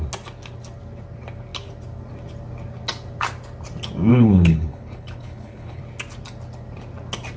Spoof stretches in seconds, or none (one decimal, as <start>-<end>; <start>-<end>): 4.1-5.8

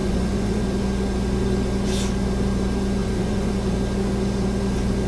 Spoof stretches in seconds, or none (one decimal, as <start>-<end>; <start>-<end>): 0.0-0.6; 3.0-3.5

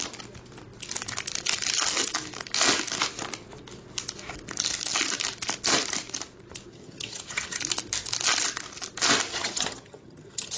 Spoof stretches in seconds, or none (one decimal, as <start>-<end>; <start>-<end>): 6.7-7.6; 9.3-10.6

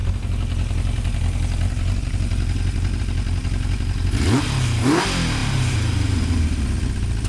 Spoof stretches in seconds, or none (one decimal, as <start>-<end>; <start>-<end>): 5.4-6.6